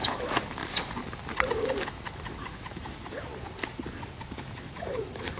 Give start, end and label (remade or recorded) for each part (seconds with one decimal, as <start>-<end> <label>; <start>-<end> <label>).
0.0-0.6 remade; 0.6-1.5 recorded; 1.5-3.3 remade; 3.3-4.3 recorded; 4.3-5.4 remade